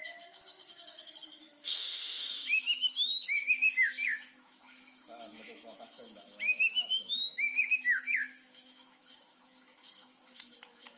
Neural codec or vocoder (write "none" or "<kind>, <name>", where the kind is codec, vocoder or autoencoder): autoencoder, DAC-VAE